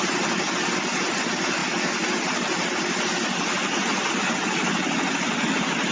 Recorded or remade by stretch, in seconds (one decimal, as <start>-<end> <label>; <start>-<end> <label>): 0.0-5.9 recorded